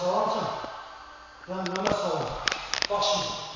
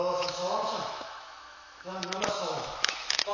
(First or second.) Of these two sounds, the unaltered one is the first